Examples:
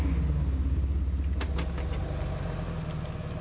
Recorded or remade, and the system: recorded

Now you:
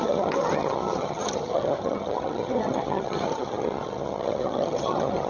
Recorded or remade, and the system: remade, vocoder, HiFi-GAN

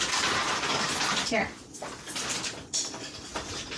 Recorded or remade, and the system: recorded